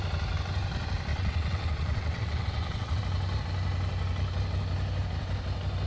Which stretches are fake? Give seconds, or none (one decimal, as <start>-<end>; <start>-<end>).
1.1-3.0